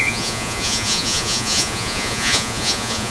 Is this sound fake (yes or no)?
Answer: yes